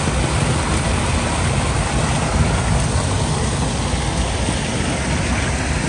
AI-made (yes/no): no